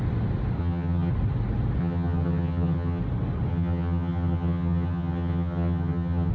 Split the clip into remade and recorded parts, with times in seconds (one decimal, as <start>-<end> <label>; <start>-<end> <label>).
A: 0.0-0.6 recorded; 0.6-1.1 remade; 1.1-1.8 recorded; 1.8-3.0 remade; 3.0-3.5 recorded; 3.5-6.3 remade